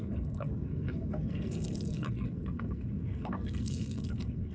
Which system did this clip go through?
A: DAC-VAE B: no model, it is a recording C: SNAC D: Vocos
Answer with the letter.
C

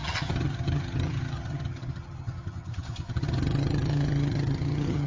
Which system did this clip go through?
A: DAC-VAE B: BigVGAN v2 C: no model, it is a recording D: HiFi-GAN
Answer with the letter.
D